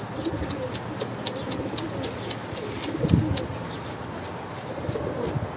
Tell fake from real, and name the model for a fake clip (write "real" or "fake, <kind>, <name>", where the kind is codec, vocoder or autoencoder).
real